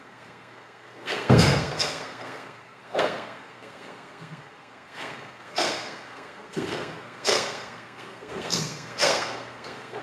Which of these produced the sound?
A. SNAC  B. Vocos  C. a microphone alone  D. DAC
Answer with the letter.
A